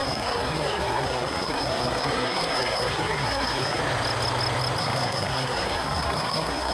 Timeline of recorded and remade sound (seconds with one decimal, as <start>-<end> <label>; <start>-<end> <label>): 0.0-3.8 remade; 3.8-4.8 recorded; 4.8-6.7 remade